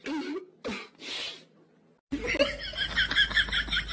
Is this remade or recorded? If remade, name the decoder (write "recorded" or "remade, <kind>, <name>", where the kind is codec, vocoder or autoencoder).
recorded